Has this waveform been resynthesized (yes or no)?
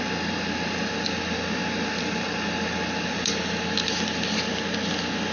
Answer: no